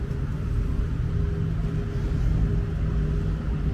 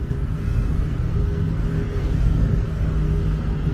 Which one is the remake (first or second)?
second